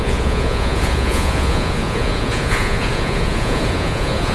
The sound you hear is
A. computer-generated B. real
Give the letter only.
A